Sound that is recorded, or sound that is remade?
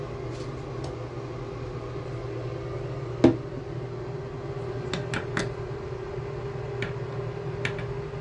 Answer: recorded